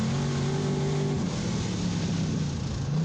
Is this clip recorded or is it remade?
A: recorded